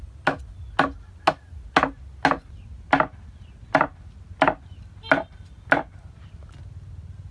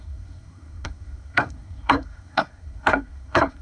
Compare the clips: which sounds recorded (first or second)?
first